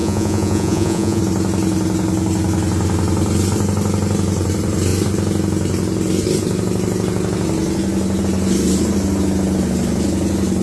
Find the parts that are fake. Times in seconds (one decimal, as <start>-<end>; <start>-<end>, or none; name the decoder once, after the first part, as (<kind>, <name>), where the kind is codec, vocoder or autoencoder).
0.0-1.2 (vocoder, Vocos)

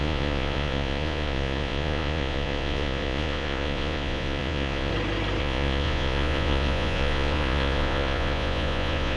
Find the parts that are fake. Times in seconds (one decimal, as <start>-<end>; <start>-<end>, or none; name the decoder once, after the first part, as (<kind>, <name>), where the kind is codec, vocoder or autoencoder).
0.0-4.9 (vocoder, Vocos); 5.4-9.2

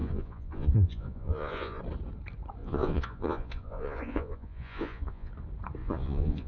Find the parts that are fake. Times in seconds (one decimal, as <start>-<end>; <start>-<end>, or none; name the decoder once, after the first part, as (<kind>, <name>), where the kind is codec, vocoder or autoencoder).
0.0-1.8 (vocoder, Vocos); 2.6-5.3; 5.8-6.5

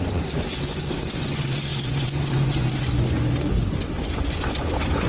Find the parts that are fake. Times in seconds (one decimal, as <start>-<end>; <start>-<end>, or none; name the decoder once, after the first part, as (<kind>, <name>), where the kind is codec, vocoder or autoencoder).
0.0-5.1 (vocoder, Vocos)